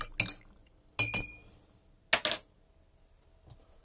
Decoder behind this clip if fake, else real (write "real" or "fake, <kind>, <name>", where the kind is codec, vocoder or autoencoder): real